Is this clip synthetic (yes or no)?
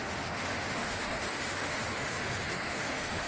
yes